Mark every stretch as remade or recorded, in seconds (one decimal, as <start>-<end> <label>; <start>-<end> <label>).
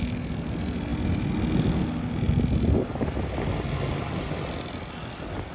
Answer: 0.0-5.5 recorded